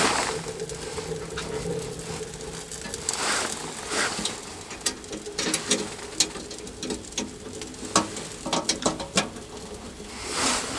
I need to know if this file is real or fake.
real